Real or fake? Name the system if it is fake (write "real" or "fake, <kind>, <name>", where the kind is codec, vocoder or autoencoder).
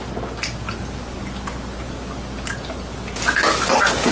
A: real